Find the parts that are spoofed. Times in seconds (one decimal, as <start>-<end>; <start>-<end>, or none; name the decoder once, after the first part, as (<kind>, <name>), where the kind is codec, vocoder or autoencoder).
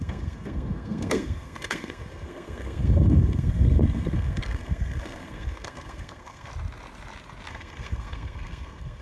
0.0-6.5 (codec, SNAC); 7.5-9.0